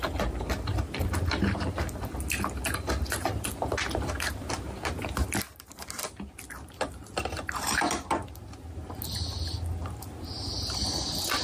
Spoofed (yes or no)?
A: no